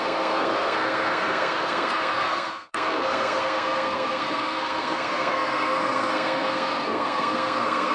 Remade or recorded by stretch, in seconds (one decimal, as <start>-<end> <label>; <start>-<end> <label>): 0.0-7.9 remade